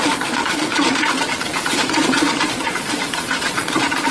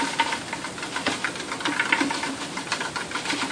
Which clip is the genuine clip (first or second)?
second